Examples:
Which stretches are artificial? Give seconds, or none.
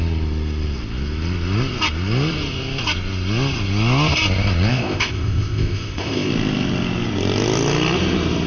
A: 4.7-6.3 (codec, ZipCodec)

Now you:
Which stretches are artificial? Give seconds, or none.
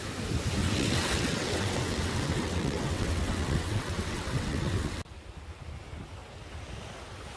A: 0.6-5.0 (vocoder, WaveNeXt)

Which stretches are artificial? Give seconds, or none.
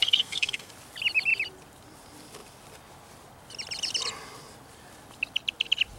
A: 0.0-0.7 (codec, SNAC)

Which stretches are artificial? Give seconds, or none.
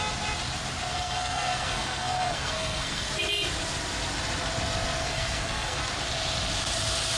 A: 0.9-3.1 (codec, SNAC); 5.0-5.8